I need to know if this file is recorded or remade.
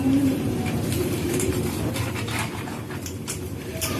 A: remade